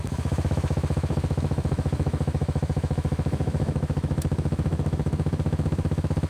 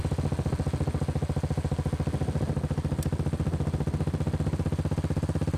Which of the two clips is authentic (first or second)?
second